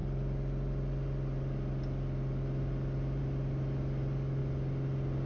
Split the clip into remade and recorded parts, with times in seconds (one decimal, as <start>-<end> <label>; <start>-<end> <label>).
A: 0.0-5.3 recorded